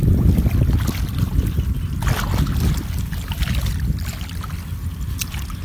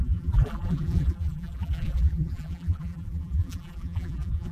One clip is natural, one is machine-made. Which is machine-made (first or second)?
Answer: second